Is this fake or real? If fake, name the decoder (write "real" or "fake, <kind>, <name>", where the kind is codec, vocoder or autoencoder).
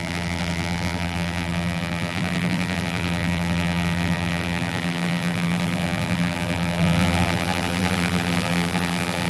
fake, vocoder, BigVGAN v2